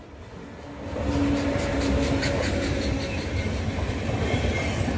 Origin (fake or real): real